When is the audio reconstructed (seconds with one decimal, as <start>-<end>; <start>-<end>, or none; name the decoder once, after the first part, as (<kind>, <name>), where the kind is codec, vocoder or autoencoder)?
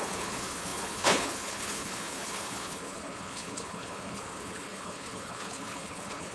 0.0-6.3 (codec, HILCodec)